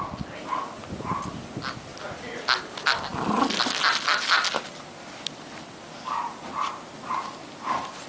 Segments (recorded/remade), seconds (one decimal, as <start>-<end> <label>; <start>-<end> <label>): 0.0-8.1 recorded